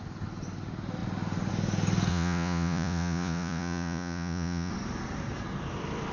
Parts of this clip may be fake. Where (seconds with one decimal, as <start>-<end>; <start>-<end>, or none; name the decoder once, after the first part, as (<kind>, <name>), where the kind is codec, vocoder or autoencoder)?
2.1-4.7 (vocoder, Vocos)